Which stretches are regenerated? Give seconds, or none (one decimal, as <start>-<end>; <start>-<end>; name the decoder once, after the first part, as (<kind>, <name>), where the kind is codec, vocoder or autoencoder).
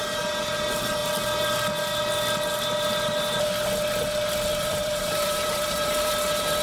4.5-6.1 (vocoder, BigVGAN v2)